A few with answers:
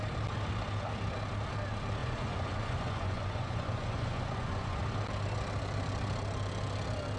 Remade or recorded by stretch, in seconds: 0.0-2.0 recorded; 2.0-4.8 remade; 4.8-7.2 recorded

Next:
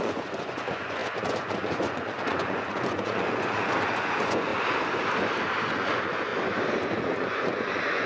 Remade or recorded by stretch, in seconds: 0.0-4.5 remade; 4.5-5.7 recorded; 5.7-6.3 remade; 6.3-7.0 recorded; 7.0-8.1 remade

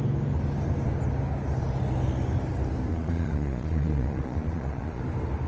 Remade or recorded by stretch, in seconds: 0.0-2.9 recorded; 2.9-5.0 remade; 5.0-5.5 recorded

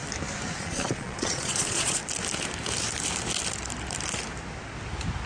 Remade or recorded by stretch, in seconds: 0.0-0.6 recorded; 0.6-2.0 remade; 2.0-5.3 recorded

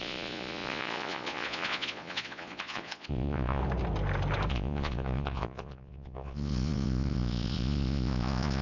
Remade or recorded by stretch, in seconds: 0.0-3.6 remade; 3.6-4.5 recorded; 4.5-8.6 remade